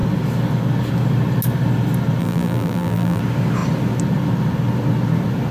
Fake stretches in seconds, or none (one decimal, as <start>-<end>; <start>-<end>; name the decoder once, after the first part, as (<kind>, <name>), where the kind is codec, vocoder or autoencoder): 2.2-3.2 (vocoder, BigVGAN v2)